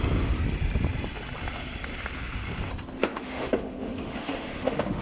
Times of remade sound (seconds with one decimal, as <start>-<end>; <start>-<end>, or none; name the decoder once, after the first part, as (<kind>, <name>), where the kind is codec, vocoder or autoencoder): 3.0-5.0 (autoencoder, DAC-VAE)